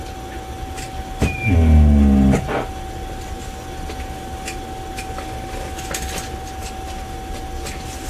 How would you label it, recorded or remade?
recorded